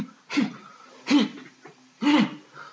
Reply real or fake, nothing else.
real